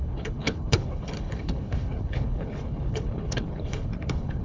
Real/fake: fake